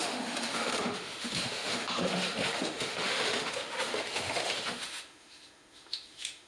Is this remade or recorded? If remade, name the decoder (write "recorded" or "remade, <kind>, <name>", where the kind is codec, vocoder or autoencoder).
remade, autoencoder, DAC-VAE